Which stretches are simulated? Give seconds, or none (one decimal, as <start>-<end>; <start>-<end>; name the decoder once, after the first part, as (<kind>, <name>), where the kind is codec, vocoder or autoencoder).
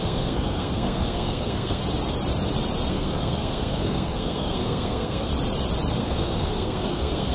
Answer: 0.0-1.8 (codec, SNAC); 2.9-5.3; 6.0-7.3